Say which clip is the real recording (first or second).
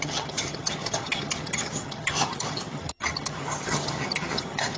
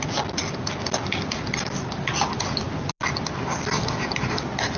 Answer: second